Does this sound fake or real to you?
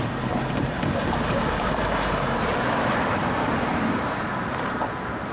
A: fake